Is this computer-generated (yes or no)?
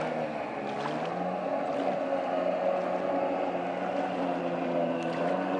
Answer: no